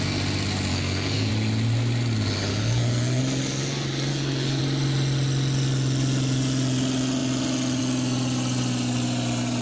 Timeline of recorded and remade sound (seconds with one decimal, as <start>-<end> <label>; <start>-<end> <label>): 0.0-0.7 recorded; 0.7-1.3 remade; 1.3-2.5 recorded; 2.5-3.2 remade; 3.2-4.1 recorded; 4.1-4.6 remade; 4.6-9.6 recorded